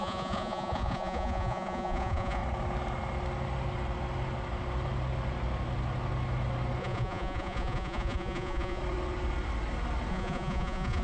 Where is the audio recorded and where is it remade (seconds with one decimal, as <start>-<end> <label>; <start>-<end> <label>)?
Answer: 0.0-2.4 remade; 2.4-6.8 recorded; 6.8-8.8 remade; 8.8-10.1 recorded; 10.1-11.0 remade